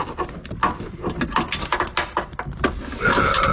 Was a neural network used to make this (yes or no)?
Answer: no